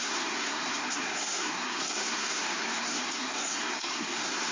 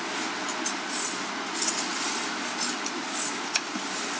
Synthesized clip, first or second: first